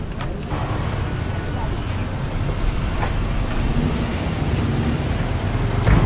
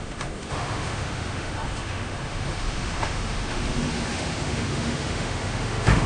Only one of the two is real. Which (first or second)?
first